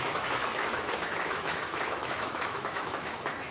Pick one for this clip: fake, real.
fake